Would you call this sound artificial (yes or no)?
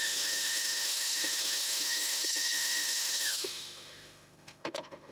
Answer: yes